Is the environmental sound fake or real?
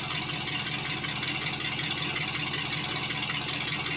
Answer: real